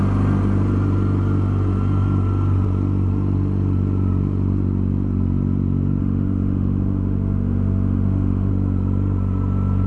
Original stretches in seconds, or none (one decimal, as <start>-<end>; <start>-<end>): 0.0-6.0; 8.5-9.9